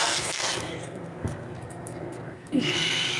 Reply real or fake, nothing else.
fake